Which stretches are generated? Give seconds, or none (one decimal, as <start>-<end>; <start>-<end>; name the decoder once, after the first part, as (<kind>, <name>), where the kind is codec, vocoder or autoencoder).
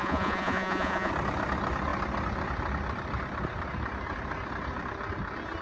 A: 0.0-1.1 (vocoder, Vocos)